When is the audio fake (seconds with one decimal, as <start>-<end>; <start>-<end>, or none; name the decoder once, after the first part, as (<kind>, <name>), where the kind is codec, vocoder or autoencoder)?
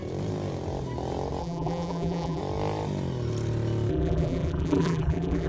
1.4-2.4 (vocoder, BigVGAN v2); 3.9-5.5